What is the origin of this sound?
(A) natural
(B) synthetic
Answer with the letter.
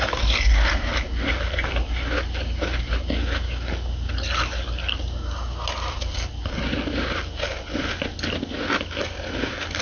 A